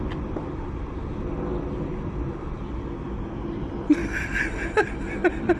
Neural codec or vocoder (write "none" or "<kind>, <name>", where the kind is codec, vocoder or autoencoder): none